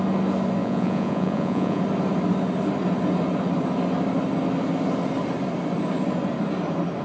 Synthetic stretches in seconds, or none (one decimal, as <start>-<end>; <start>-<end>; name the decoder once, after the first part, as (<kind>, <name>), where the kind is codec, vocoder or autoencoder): 0.6-1.8 (vocoder, Vocos)